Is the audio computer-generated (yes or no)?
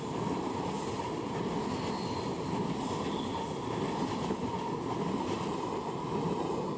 no